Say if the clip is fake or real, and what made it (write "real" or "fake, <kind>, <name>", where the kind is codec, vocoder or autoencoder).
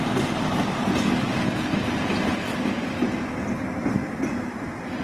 real